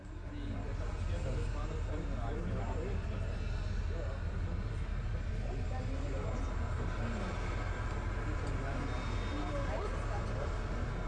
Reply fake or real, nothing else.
real